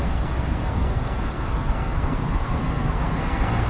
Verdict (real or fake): fake